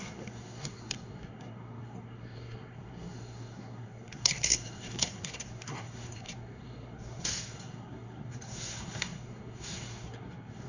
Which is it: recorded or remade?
remade